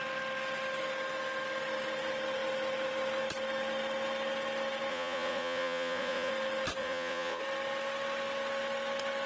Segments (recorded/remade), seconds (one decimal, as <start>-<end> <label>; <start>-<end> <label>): 0.0-4.9 recorded; 4.9-6.3 remade; 6.3-6.8 recorded; 6.8-7.4 remade; 7.4-9.3 recorded